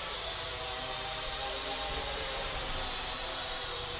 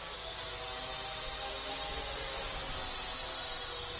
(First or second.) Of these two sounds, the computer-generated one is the first